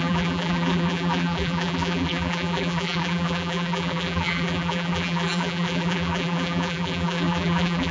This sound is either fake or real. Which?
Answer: fake